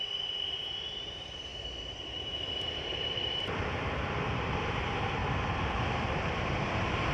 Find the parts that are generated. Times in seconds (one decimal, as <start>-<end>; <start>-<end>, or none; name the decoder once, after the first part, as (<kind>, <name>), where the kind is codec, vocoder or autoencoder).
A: 0.0-7.1 (vocoder, BigVGAN v2)